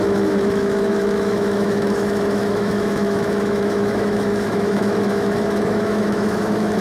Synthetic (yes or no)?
yes